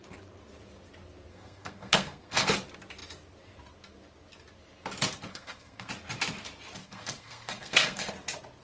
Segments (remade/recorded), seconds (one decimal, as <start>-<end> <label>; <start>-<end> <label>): 0.0-1.3 recorded; 1.3-2.5 remade; 2.5-5.3 recorded; 5.3-5.9 remade; 5.9-6.8 recorded; 6.8-8.1 remade; 8.1-8.6 recorded

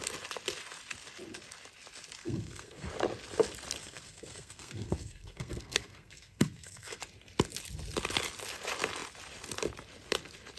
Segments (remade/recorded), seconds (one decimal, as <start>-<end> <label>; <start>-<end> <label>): 0.0-2.2 recorded; 2.2-2.9 remade; 2.9-3.8 recorded; 3.8-7.0 remade; 7.0-10.6 recorded

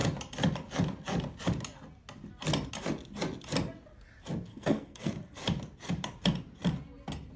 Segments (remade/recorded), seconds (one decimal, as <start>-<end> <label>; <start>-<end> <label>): 0.0-4.5 recorded; 4.5-5.1 remade; 5.1-7.4 recorded

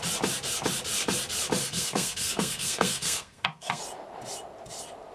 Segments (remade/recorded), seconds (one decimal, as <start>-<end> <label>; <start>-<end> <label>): 0.0-1.6 recorded; 1.6-3.8 remade; 3.8-5.1 recorded

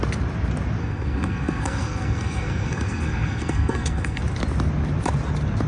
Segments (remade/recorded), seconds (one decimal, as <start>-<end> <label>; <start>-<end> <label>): 0.0-0.8 recorded; 0.8-4.2 remade; 4.2-5.7 recorded

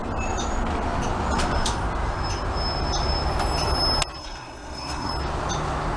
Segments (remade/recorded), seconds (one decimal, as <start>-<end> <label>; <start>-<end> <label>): 0.0-4.2 recorded; 4.2-5.1 remade; 5.1-6.0 recorded

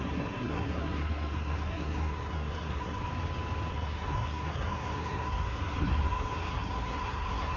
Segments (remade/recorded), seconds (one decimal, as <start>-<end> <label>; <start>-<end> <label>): 0.0-3.1 remade; 3.1-3.7 recorded; 3.7-7.6 remade